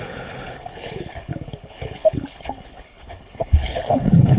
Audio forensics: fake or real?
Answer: fake